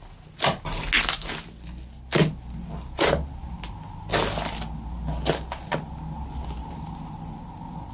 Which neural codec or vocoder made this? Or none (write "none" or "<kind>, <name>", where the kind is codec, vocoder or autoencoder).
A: none